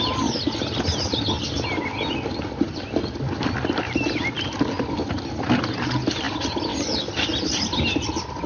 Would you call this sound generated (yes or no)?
no